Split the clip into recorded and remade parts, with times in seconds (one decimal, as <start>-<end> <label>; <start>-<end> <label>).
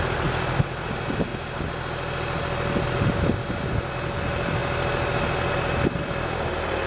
0.0-1.3 remade; 1.3-3.9 recorded; 3.9-4.6 remade; 4.6-5.5 recorded; 5.5-6.9 remade